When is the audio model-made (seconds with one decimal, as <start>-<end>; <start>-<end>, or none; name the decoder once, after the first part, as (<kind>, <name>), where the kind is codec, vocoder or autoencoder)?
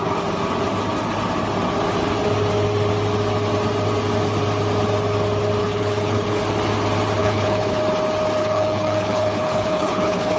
5.6-6.4 (codec, HILCodec); 7.2-7.8; 8.4-10.4